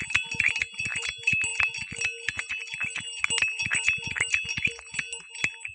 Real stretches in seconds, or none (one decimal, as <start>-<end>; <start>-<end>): 0.0-5.7